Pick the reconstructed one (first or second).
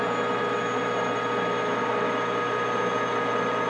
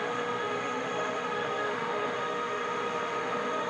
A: second